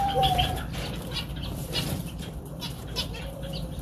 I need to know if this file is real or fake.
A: fake